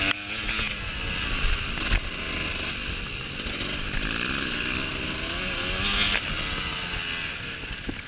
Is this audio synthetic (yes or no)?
no